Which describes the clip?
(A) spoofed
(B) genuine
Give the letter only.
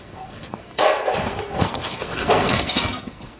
A